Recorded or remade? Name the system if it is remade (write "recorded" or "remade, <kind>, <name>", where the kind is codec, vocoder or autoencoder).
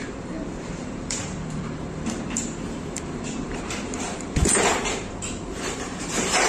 remade, vocoder, BigVGAN v2